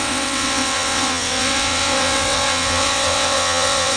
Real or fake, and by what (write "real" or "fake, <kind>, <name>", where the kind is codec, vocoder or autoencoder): fake, vocoder, WaveNeXt